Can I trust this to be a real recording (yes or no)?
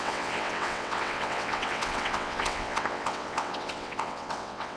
no